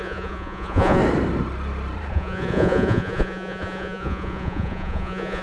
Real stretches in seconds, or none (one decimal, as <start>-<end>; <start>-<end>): 1.0-2.1